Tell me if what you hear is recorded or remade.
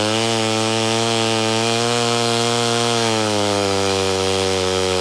remade